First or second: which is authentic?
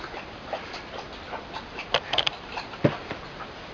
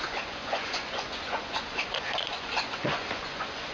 first